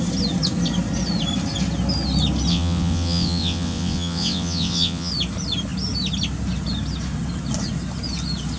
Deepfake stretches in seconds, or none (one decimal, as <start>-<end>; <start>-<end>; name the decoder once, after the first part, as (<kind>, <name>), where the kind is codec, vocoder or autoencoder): 2.5-5.1 (vocoder, WaveNeXt)